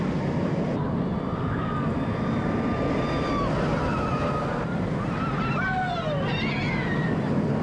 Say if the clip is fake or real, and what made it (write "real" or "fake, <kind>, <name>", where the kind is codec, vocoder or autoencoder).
real